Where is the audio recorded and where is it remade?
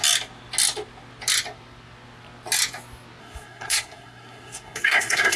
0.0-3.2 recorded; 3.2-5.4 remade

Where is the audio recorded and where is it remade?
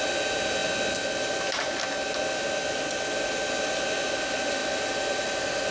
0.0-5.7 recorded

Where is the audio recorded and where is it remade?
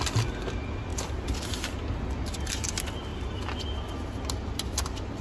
0.0-5.2 recorded